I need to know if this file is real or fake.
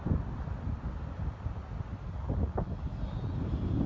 real